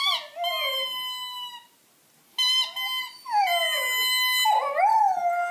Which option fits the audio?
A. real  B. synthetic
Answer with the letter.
A